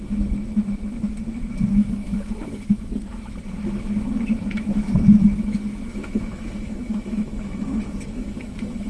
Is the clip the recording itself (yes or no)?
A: no